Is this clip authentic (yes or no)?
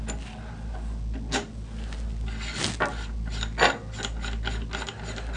yes